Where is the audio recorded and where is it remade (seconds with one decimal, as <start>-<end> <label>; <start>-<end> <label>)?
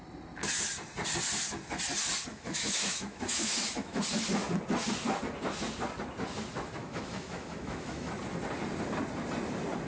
0.0-2.3 recorded; 2.3-4.0 remade; 4.0-6.8 recorded; 6.8-8.1 remade; 8.1-9.9 recorded